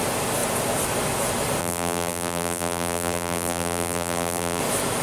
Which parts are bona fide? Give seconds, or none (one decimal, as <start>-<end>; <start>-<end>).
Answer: 0.0-1.6; 4.6-5.0